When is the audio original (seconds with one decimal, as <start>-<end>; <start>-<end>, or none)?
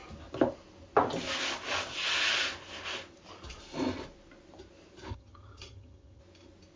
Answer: 0.0-5.1; 6.2-6.8